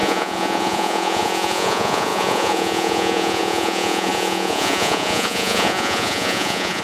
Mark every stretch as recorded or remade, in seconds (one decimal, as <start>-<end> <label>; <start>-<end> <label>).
0.0-6.8 remade